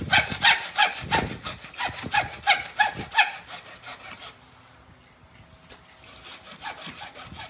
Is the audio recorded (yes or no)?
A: yes